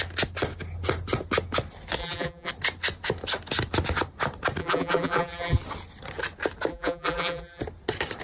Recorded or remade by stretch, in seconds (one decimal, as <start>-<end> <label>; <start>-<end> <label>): 0.0-2.0 recorded; 2.0-2.5 remade; 2.5-4.6 recorded; 4.6-5.6 remade; 5.6-6.7 recorded; 6.7-7.6 remade; 7.6-8.2 recorded